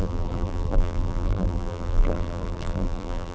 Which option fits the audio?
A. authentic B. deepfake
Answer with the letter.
B